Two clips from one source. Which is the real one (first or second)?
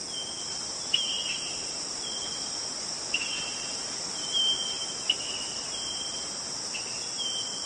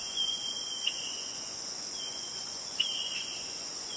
first